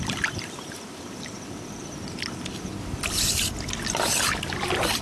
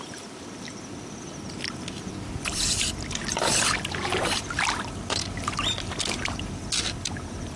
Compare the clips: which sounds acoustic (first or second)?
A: second